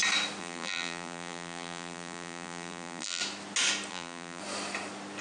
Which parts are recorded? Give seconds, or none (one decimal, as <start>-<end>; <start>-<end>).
0.0-0.4; 3.2-3.9; 4.4-5.2